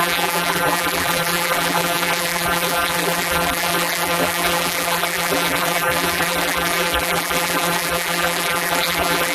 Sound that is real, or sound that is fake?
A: fake